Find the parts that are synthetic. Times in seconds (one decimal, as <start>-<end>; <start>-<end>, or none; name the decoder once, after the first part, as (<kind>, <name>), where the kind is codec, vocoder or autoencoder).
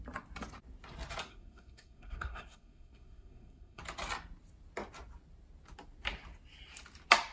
1.3-3.8 (codec, SNAC)